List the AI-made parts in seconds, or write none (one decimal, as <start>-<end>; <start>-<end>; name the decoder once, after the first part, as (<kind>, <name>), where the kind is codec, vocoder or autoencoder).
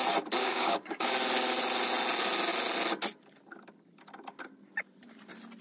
0.4-1.1 (codec, DAC)